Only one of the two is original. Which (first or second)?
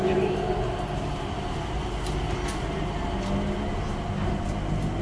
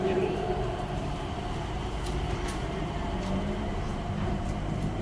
first